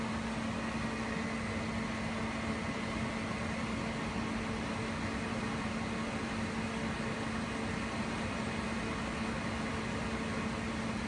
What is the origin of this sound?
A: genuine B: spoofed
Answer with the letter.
A